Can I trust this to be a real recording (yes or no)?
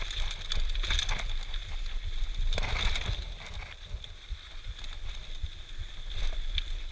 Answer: yes